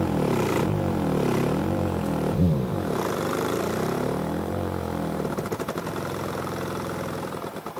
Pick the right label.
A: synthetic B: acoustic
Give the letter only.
A